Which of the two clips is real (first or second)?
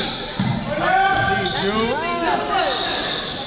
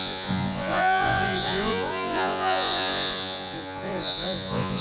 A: first